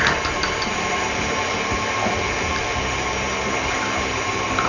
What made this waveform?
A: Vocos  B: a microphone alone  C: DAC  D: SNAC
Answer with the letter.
B